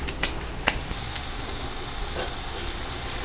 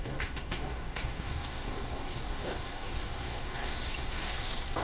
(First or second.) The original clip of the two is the first